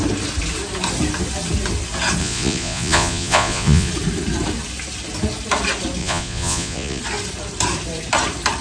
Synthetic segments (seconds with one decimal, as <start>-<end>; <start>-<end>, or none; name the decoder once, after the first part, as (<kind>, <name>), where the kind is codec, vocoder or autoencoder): 2.2-3.9 (vocoder, Vocos); 6.0-7.0